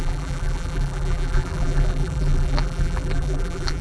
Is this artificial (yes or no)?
yes